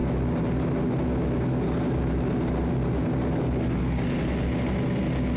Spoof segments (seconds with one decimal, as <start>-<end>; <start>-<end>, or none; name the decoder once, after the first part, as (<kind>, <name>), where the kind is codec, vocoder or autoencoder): none